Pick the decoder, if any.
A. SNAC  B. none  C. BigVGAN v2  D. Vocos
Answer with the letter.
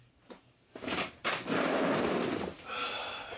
C